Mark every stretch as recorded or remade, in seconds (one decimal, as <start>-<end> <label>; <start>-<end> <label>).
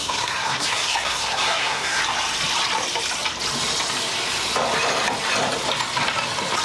0.0-2.0 remade; 2.0-6.6 recorded